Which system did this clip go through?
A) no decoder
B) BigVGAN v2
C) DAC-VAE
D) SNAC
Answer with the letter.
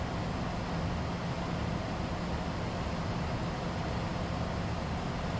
A